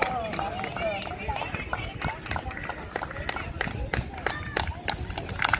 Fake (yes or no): no